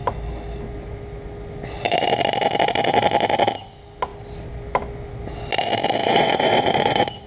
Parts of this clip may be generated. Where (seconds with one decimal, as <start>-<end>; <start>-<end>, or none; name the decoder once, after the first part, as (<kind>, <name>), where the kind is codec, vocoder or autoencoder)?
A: 6.0-7.3 (vocoder, WaveNeXt)